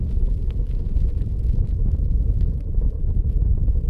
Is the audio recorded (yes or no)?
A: yes